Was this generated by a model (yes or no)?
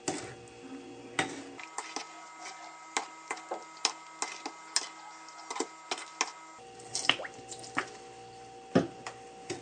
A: no